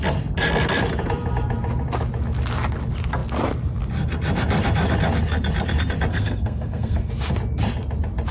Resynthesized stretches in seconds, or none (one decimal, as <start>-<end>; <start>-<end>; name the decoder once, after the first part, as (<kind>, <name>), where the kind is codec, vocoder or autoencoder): 6.1-7.1 (codec, SNAC)